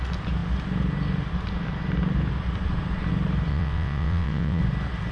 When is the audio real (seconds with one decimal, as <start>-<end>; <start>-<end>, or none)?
0.0-3.5; 4.6-5.1